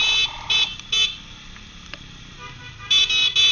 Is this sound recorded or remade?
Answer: recorded